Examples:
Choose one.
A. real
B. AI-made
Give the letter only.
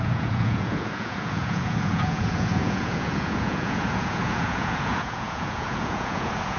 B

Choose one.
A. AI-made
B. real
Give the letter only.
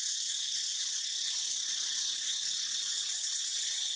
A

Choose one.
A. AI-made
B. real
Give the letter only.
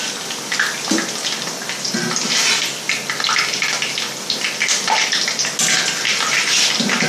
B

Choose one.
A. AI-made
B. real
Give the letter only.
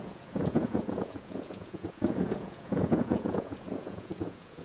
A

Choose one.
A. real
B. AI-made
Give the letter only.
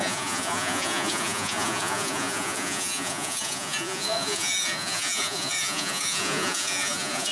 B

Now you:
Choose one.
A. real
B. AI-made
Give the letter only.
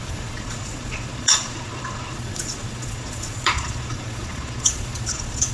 B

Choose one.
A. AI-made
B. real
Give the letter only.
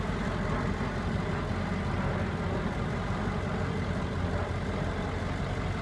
B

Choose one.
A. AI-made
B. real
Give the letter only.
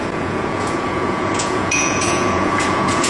A